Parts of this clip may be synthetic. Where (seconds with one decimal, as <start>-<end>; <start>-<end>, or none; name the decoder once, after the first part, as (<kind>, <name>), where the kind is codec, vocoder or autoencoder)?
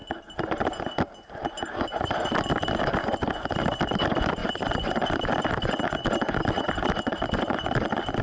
3.5-4.4 (vocoder, BigVGAN v2); 6.6-8.2